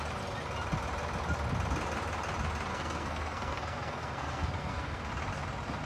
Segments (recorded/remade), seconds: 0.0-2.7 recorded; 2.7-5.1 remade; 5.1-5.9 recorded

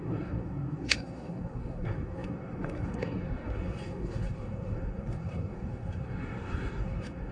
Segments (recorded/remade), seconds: 0.0-7.3 remade

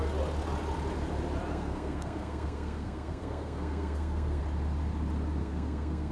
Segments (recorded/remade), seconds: 0.0-1.5 recorded; 1.5-4.4 remade; 4.4-5.4 recorded; 5.4-6.1 remade

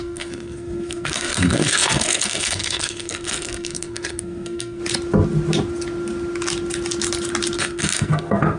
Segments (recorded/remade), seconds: 0.0-4.8 remade; 4.8-7.6 recorded; 7.6-8.6 remade

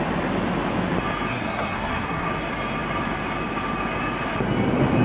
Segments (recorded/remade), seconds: 0.0-1.3 recorded; 1.3-2.3 remade; 2.3-5.0 recorded

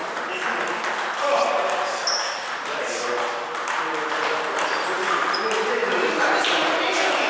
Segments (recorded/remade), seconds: 0.0-7.3 recorded